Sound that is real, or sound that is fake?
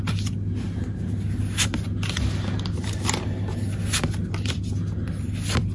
real